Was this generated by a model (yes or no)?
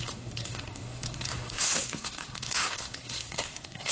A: yes